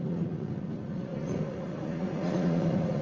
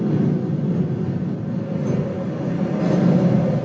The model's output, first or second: first